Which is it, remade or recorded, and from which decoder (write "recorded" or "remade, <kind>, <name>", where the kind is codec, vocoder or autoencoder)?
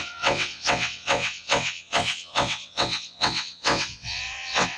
remade, vocoder, WaveNeXt